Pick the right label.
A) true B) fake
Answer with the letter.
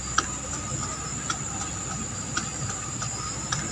A